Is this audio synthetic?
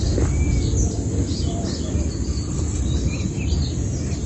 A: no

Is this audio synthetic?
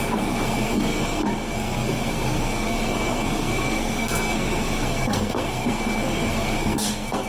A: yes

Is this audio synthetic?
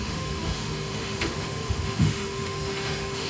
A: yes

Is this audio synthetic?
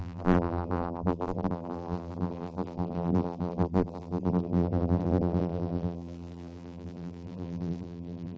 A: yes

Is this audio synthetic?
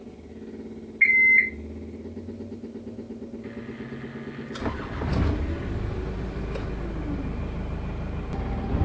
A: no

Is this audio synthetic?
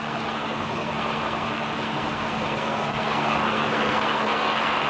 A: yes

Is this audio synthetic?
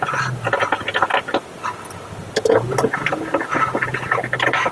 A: no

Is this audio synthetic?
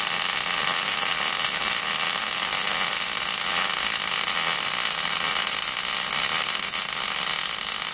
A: no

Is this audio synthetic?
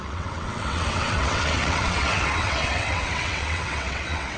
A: yes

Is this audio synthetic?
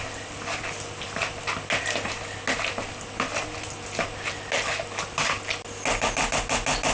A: no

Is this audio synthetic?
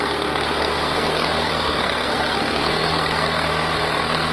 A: yes